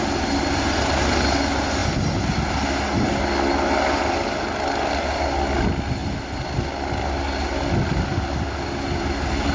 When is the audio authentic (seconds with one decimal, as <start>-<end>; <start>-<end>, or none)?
0.0-9.5

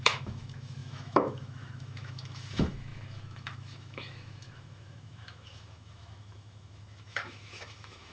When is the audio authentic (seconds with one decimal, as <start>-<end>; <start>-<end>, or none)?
none

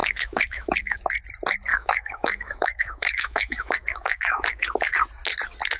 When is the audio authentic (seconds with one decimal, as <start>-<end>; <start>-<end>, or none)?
1.0-1.7; 5.0-5.8

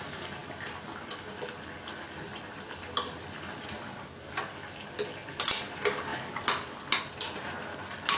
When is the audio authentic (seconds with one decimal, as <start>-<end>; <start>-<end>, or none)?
0.0-8.2

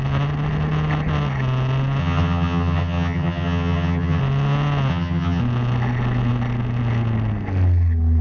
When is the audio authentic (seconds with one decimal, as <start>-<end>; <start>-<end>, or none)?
0.0-2.0; 4.2-4.9; 5.4-8.2

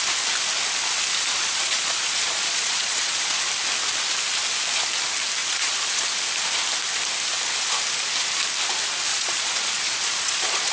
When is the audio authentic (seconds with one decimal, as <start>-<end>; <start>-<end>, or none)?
0.0-1.3; 3.4-5.4; 6.0-9.1